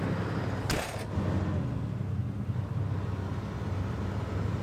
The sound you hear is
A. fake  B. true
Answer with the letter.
B